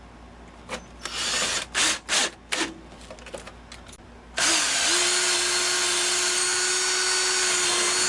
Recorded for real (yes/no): yes